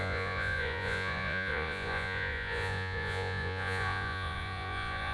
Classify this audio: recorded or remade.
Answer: remade